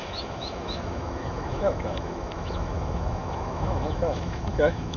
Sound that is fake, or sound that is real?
fake